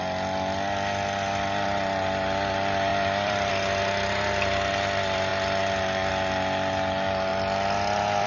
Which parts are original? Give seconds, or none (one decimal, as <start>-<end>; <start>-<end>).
0.0-2.9; 3.5-7.3